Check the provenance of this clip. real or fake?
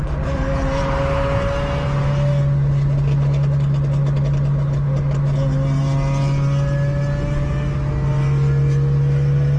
real